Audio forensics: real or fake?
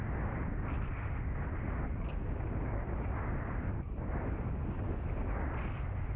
real